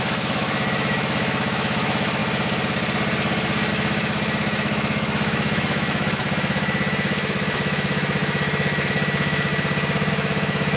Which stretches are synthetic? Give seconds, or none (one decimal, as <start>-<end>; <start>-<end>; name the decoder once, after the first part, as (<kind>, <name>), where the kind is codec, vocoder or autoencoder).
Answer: 0.0-2.2 (autoencoder, DAC-VAE); 3.7-9.5; 10.1-10.8

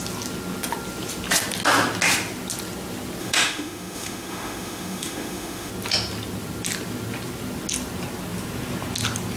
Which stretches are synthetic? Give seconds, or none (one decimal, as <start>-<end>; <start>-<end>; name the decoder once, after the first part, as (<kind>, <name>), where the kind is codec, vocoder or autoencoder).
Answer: 3.2-5.7 (autoencoder, DAC-VAE)